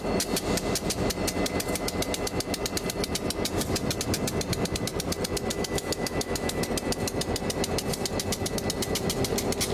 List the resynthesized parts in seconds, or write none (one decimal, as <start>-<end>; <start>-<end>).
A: 5.5-6.6